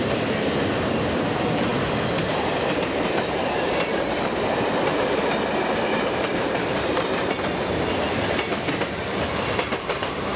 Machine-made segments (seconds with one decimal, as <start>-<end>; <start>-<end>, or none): 0.0-1.7; 2.2-6.9; 8.4-10.4